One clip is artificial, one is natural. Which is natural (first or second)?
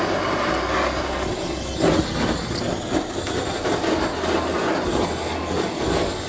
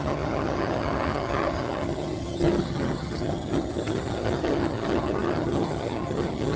first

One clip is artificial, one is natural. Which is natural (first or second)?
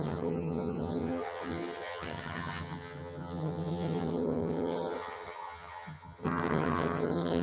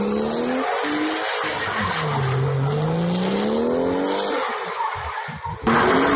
second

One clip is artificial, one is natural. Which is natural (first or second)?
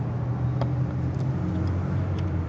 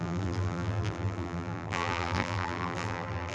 first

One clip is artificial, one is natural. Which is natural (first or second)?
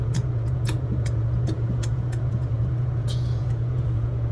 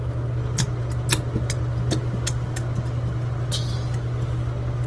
second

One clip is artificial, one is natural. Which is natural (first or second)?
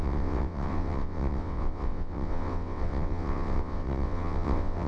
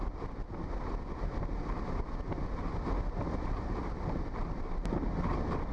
second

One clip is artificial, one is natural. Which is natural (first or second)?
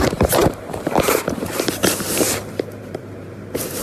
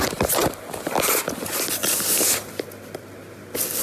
second